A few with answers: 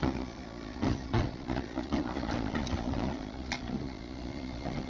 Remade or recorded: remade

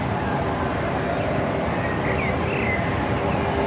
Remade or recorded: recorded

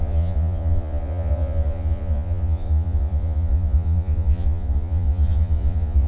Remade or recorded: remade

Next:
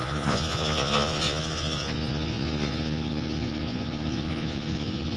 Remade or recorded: remade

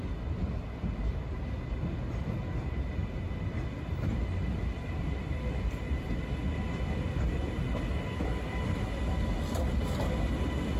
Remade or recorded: recorded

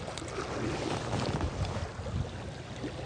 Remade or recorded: recorded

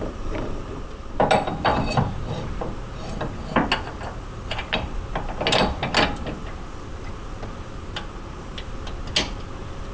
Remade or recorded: recorded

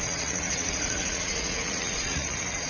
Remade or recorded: remade